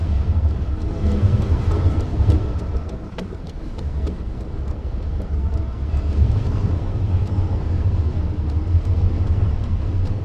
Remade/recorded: remade